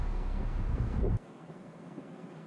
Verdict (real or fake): fake